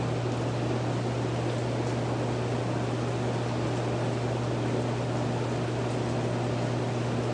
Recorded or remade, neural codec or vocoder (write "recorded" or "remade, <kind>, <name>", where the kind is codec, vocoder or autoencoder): recorded